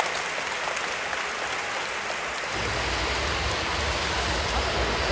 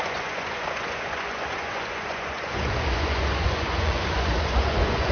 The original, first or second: first